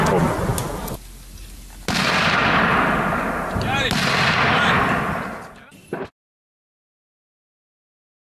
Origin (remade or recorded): recorded